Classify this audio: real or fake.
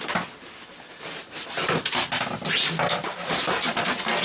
real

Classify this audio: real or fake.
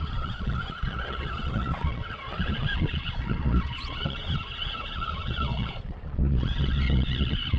fake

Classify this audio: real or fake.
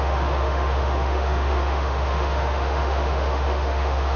fake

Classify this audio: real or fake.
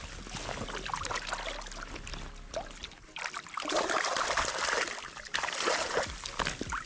real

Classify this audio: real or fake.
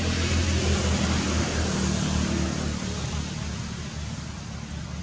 real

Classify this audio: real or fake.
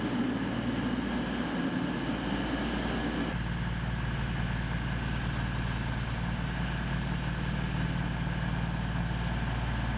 real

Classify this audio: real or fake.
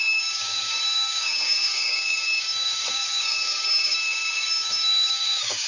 fake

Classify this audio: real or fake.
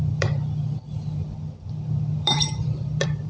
fake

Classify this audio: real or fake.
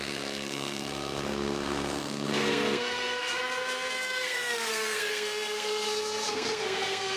fake